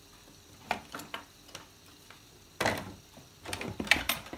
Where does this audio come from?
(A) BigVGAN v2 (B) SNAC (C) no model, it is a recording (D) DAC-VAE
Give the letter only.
A